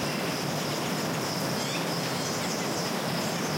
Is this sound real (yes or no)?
yes